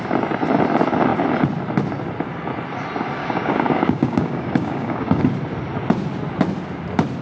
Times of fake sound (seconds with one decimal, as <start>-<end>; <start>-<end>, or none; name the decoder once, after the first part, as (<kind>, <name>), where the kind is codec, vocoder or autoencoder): 3.2-5.2 (codec, DAC)